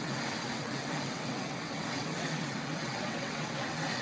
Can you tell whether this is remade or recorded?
remade